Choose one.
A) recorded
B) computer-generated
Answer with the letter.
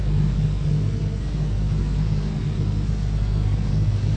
B